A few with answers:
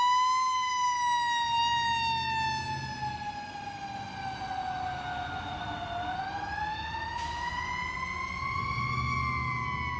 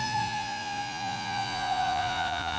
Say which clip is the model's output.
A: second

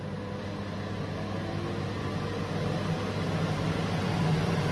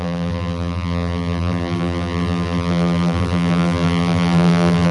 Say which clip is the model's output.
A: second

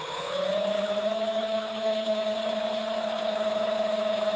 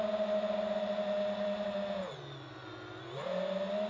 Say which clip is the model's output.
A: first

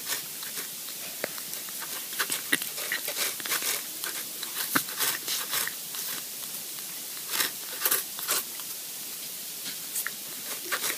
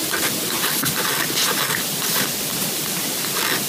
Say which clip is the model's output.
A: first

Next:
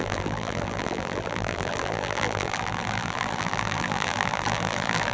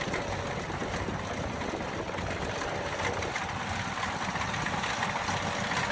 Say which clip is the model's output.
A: first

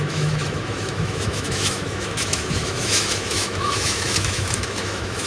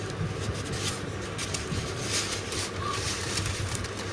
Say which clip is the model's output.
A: first